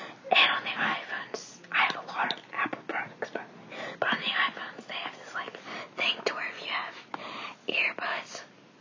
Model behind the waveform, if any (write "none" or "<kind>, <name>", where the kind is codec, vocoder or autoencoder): none